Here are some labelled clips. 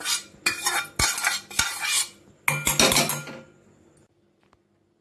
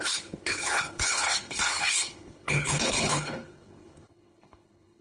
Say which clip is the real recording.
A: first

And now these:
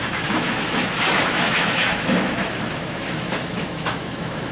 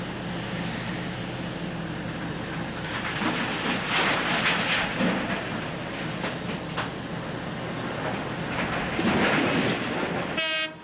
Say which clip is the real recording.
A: second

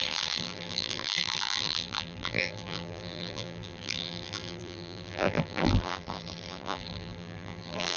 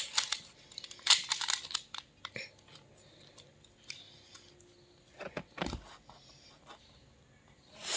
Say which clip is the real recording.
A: second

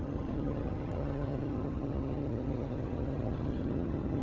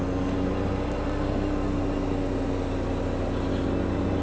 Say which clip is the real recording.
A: second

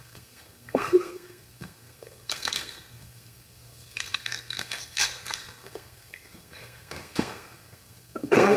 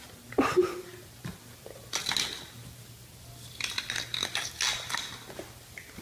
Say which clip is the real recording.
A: second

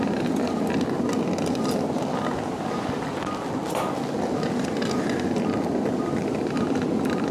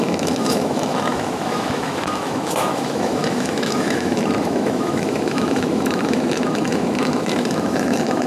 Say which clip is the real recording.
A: first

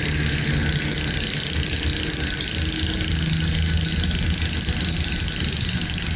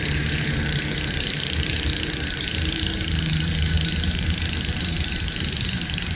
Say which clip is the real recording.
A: first